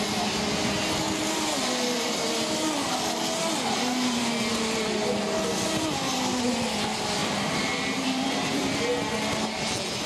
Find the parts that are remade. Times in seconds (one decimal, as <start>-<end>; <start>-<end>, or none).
1.2-2.3; 7.2-8.8